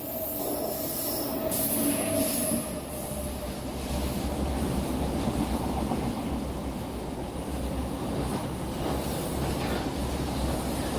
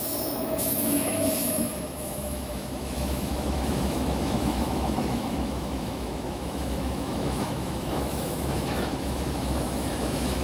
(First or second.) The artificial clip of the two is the second